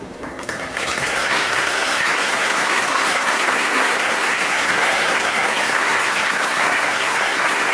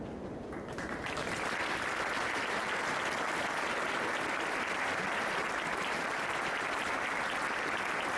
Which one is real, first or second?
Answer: second